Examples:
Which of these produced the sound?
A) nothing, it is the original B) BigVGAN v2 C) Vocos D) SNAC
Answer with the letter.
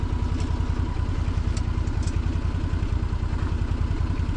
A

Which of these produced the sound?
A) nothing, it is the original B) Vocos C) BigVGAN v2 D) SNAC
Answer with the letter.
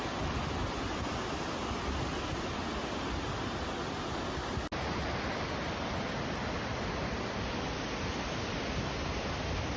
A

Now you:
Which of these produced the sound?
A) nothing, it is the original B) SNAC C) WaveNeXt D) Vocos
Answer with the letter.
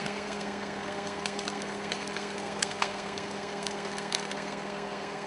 B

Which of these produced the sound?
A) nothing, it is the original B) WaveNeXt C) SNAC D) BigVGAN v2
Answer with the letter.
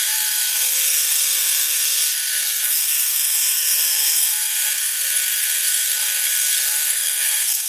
C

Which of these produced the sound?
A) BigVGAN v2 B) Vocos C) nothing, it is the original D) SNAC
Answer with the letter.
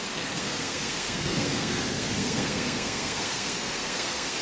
D